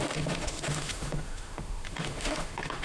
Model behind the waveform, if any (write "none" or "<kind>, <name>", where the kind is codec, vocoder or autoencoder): autoencoder, DAC-VAE